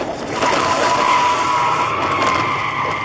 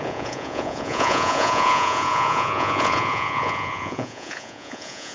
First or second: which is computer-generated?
second